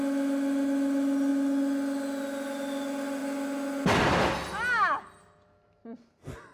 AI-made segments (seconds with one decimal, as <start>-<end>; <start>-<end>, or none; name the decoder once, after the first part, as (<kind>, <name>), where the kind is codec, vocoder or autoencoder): none